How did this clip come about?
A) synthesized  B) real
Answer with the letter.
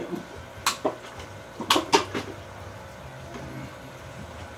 B